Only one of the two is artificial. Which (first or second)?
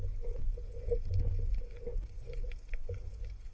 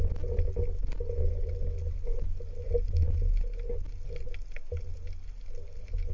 first